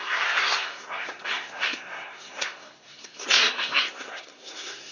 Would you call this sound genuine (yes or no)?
no